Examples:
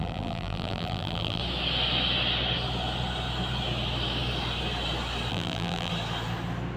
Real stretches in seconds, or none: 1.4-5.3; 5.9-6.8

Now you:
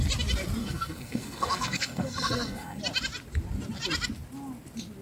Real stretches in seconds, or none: 0.0-0.6; 2.8-5.0

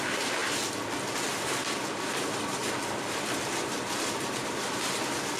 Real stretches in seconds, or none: 0.4-1.5; 2.6-3.6

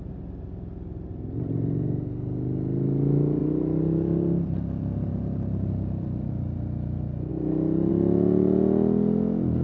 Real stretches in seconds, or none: 0.0-3.4; 6.3-9.6

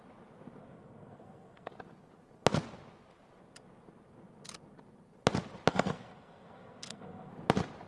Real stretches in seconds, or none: 0.0-0.6; 1.7-5.7; 7.3-7.9

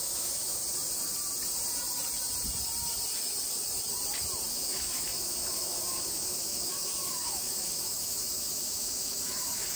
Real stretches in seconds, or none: 0.6-4.5

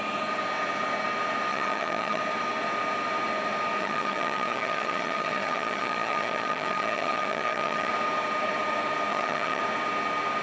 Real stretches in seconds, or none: 0.0-1.5; 2.2-3.8; 7.9-9.1; 9.6-10.4